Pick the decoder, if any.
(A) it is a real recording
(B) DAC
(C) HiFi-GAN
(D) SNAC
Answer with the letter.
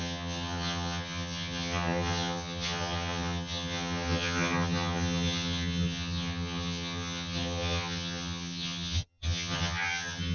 C